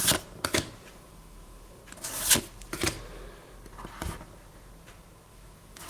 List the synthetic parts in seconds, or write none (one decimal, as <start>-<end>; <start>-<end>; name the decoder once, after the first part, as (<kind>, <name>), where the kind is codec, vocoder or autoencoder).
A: 0.9-1.8 (autoencoder, DAC-VAE); 5.3-5.9